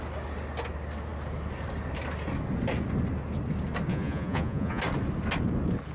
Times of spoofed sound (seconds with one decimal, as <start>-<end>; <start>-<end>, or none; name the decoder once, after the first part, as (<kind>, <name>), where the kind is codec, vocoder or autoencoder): 3.9-4.8 (vocoder, Vocos)